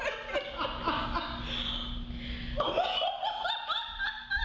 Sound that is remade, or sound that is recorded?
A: recorded